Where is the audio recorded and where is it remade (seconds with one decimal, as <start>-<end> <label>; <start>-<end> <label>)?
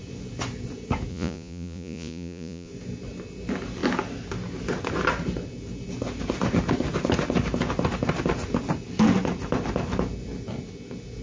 0.0-1.1 recorded; 1.1-2.7 remade; 2.7-11.2 recorded